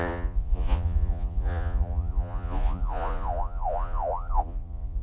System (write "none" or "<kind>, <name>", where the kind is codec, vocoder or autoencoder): vocoder, Vocos